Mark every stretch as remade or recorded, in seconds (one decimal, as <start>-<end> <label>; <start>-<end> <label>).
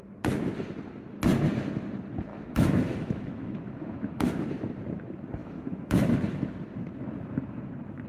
0.0-2.3 recorded; 2.3-4.4 remade; 4.4-5.4 recorded; 5.4-6.1 remade; 6.1-8.1 recorded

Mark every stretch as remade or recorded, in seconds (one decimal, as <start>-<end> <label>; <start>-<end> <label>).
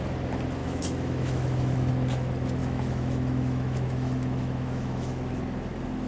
0.0-0.6 recorded; 0.6-1.9 remade; 1.9-2.6 recorded; 2.6-5.3 remade; 5.3-6.1 recorded